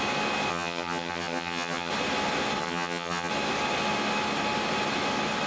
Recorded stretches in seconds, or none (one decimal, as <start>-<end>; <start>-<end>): 0.0-0.5; 1.9-2.6; 3.3-5.5